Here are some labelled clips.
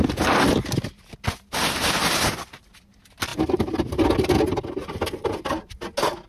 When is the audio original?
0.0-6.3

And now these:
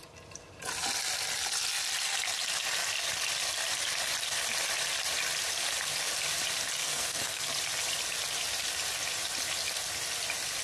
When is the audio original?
0.0-6.8; 7.5-10.6

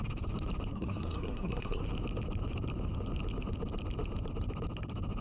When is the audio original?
0.0-0.7; 1.8-5.2

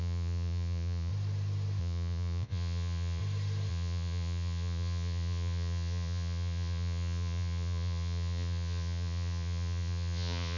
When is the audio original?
1.1-1.8; 3.2-3.7

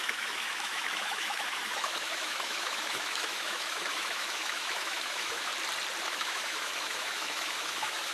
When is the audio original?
5.5-6.0

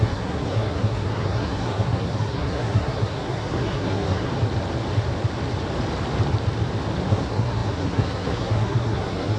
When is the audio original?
4.3-7.1